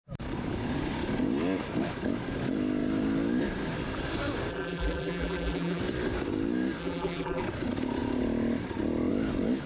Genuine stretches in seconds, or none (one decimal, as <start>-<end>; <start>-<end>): 0.0-4.5; 5.8-6.8; 7.4-9.7